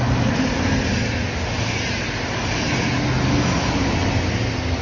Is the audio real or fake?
real